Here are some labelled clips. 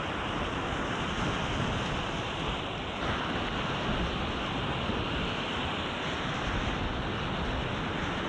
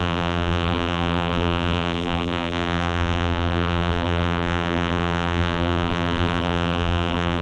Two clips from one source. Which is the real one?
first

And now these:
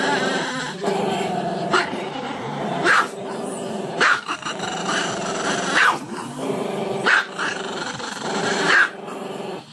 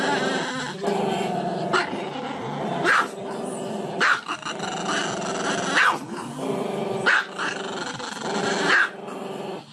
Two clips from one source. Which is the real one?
second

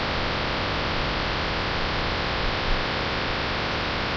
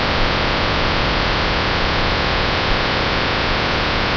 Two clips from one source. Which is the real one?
first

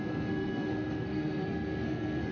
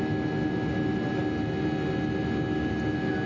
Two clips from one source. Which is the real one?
second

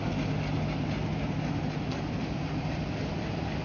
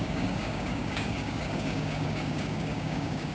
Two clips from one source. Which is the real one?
first